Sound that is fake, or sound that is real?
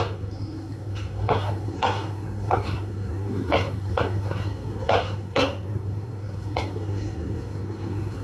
fake